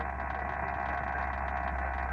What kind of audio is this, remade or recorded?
recorded